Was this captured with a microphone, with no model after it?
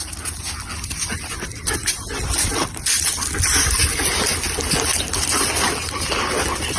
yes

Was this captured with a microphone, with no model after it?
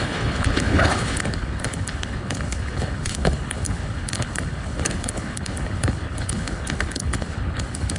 no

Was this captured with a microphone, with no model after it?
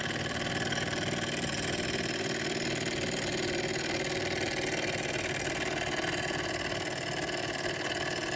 yes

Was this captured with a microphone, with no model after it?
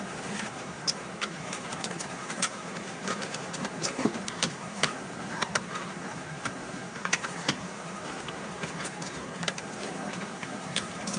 no